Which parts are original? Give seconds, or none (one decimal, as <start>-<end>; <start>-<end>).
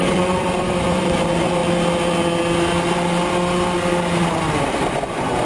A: 1.6-4.9